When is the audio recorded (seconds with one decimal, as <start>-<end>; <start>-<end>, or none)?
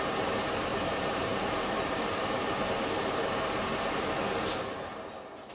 0.0-0.7; 4.0-5.5